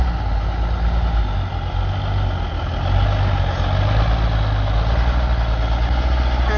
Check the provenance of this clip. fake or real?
real